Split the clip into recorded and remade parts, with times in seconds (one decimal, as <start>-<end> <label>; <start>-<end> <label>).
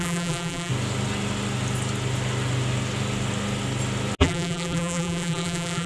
0.0-0.7 remade; 0.7-4.2 recorded; 4.2-5.9 remade